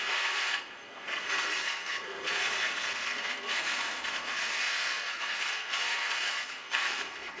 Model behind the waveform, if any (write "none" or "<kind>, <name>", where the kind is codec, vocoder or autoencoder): codec, SNAC